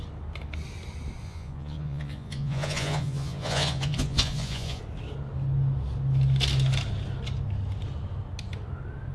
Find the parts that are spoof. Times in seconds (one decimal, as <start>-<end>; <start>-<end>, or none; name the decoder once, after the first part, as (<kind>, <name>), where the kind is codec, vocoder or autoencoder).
1.2-4.8 (vocoder, Vocos)